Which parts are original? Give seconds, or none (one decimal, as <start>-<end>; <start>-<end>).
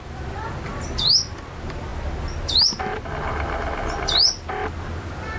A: 0.0-5.4